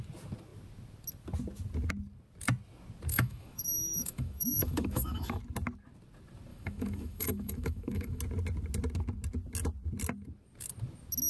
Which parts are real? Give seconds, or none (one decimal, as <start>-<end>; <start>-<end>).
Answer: 0.0-3.1; 5.4-6.5; 8.2-11.3